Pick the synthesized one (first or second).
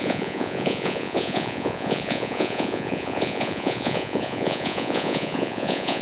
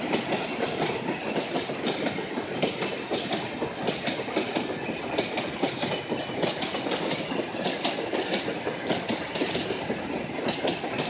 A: first